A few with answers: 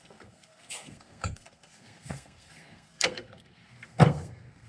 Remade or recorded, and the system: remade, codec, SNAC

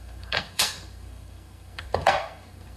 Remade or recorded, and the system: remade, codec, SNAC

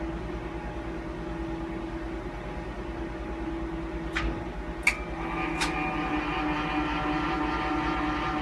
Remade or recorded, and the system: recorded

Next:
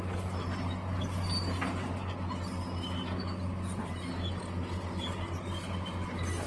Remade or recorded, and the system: recorded